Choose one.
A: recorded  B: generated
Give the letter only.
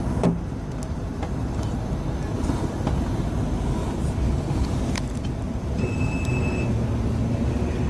A